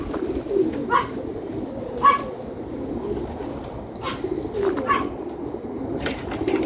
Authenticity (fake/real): real